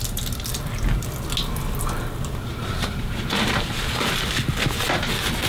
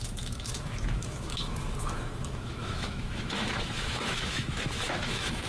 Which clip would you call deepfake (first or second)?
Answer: second